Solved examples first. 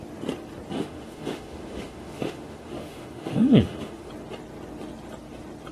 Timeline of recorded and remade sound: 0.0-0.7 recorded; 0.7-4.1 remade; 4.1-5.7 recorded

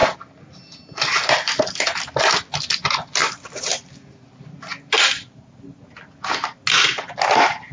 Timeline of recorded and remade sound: 0.0-7.7 recorded

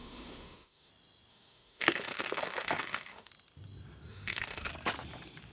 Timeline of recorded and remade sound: 0.0-0.9 remade; 0.9-1.3 recorded; 1.3-3.3 remade; 3.3-4.1 recorded; 4.1-4.7 remade; 4.7-5.5 recorded

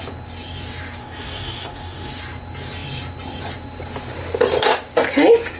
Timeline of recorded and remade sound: 0.0-1.0 recorded; 1.0-2.1 remade; 2.1-5.6 recorded

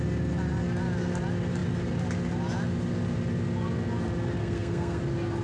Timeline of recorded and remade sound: 0.0-4.4 recorded; 4.4-5.0 remade; 5.0-5.4 recorded

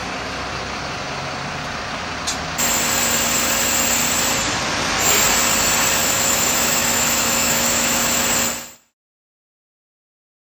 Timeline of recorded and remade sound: 0.0-6.0 recorded; 6.0-8.2 remade; 8.2-10.6 recorded

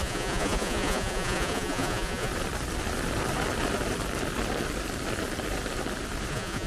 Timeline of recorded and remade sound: 0.0-2.3 remade; 2.3-6.3 recorded; 6.3-6.7 remade

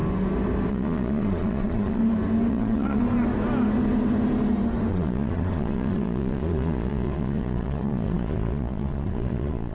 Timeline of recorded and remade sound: 0.0-0.7 recorded; 0.7-2.0 remade; 2.0-2.5 recorded; 2.5-3.0 remade; 3.0-4.9 recorded; 4.9-9.7 remade